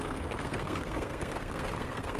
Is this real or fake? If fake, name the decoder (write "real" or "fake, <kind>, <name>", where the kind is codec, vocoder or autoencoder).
fake, codec, SNAC